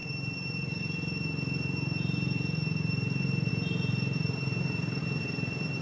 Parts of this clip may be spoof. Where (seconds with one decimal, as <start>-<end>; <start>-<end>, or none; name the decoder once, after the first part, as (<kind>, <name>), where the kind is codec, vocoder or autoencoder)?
none